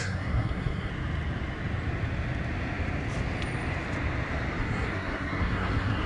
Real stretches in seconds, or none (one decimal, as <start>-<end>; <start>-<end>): 0.9-4.6